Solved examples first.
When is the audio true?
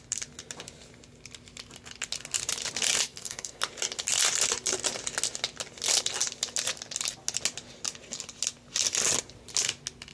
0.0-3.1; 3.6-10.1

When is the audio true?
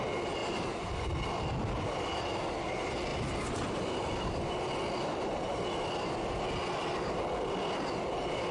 0.0-8.5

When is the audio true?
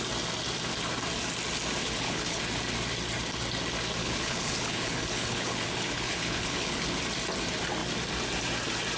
0.0-1.8; 2.5-4.0; 7.0-9.0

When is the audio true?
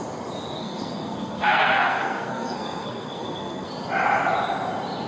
0.0-0.6; 3.7-5.1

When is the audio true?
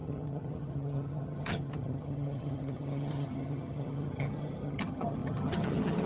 none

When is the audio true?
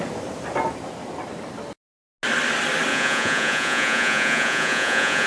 0.0-2.9